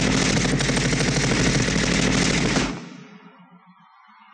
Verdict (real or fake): real